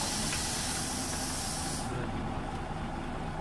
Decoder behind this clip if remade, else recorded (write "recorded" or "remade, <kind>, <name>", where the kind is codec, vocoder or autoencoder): recorded